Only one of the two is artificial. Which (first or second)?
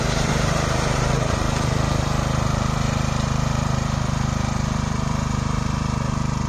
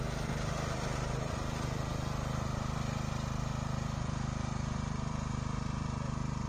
first